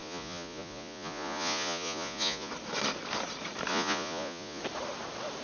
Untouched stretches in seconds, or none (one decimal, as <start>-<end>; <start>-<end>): 2.5-3.7; 4.6-5.4